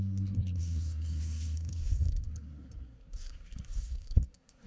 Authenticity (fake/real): fake